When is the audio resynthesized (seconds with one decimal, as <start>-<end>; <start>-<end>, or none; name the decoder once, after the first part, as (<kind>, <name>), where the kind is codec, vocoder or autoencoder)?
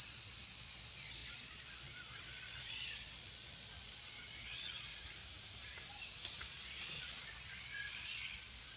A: 0.0-5.2 (vocoder, Vocos); 6.6-8.8